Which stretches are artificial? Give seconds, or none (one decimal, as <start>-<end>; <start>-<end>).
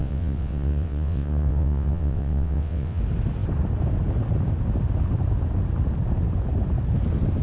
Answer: 0.0-3.0